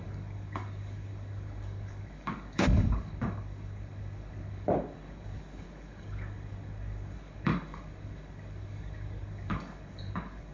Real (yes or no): no